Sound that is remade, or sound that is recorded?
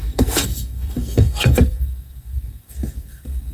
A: remade